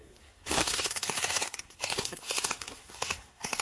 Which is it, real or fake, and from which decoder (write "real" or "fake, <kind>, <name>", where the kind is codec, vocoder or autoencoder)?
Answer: fake, codec, SNAC